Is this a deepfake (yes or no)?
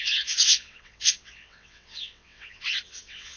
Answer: yes